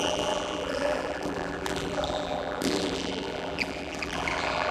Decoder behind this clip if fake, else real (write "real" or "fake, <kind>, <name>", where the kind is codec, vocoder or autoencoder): fake, vocoder, BigVGAN v2